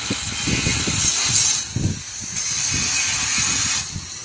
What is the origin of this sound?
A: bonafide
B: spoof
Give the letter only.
A